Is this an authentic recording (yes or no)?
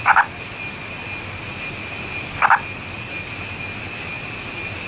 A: yes